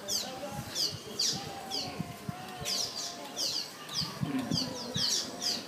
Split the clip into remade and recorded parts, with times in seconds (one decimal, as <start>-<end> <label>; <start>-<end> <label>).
0.0-5.7 recorded